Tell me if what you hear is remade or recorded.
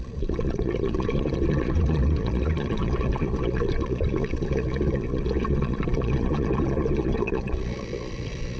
remade